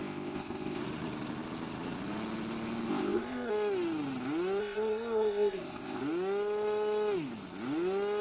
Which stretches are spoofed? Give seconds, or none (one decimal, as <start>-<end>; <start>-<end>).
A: 0.0-0.8; 2.9-3.5; 4.6-6.0